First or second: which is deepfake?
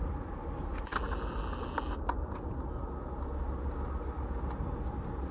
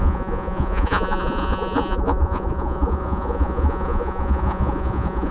second